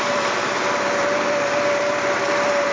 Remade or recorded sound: remade